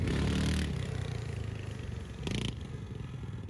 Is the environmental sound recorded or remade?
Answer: recorded